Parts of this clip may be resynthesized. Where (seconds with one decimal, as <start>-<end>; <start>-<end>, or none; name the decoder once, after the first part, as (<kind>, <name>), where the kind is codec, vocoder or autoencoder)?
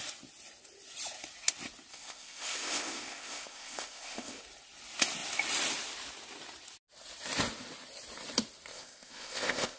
1.9-4.4 (codec, ZipCodec); 8.7-9.8